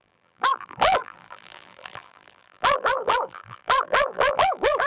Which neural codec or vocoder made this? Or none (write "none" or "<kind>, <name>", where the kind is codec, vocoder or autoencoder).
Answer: vocoder, BigVGAN v2